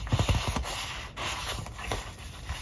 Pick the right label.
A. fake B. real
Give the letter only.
B